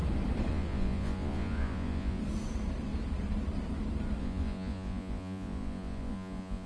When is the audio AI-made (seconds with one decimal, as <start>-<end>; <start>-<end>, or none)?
0.5-2.2; 4.2-6.7